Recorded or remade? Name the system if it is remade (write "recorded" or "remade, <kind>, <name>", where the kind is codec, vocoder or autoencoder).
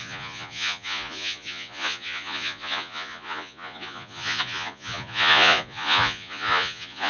remade, vocoder, Vocos